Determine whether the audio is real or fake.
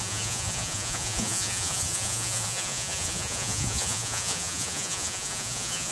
fake